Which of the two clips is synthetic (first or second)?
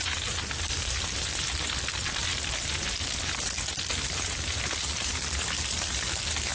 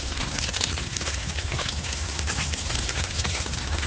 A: second